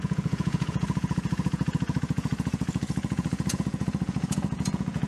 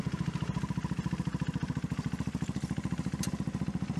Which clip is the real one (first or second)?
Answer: second